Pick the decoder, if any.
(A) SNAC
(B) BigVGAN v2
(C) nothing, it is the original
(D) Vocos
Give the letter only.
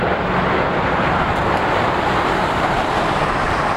B